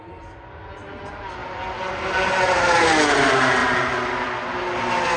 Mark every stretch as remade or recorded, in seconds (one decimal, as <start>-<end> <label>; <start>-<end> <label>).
0.0-5.2 recorded